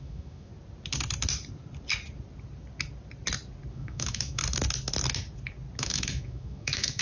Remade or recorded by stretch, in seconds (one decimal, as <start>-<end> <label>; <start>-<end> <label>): 0.0-0.5 remade; 0.5-3.7 recorded; 3.7-4.4 remade; 4.4-5.8 recorded; 5.8-7.0 remade